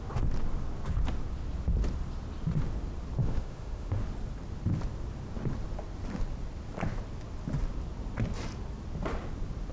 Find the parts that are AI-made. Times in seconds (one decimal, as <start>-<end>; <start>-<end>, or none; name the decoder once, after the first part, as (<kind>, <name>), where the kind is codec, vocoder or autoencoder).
3.2-4.0 (autoencoder, DAC-VAE)